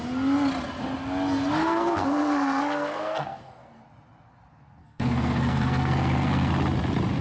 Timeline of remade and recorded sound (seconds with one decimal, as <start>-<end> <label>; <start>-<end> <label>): 0.0-1.6 recorded; 1.6-3.8 remade; 3.8-4.8 recorded; 4.8-6.5 remade; 6.5-7.2 recorded